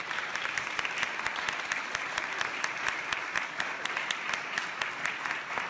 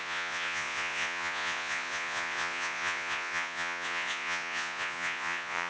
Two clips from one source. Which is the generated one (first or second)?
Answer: second